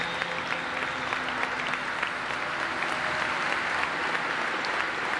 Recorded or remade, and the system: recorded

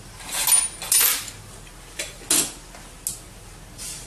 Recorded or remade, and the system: recorded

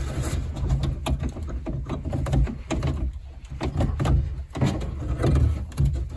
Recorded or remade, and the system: recorded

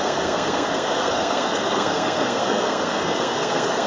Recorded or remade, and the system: remade, codec, SNAC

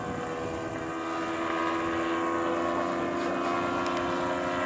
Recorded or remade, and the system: recorded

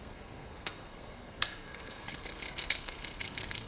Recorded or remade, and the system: remade, codec, SNAC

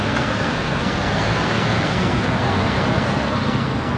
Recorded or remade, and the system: remade, codec, SNAC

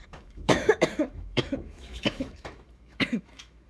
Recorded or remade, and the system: remade, autoencoder, DAC-VAE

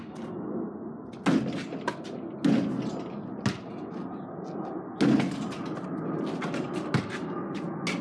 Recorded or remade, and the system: recorded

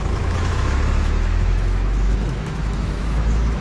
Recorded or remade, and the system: remade, autoencoder, DAC-VAE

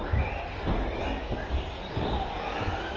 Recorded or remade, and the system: recorded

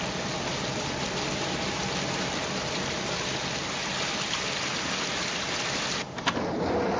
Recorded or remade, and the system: recorded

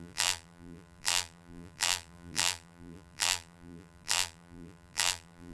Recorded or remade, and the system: remade, vocoder, BigVGAN v2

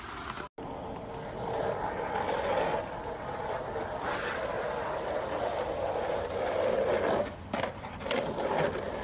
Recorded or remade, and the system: recorded